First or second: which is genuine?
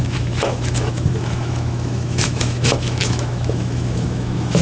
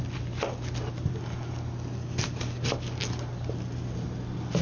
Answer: second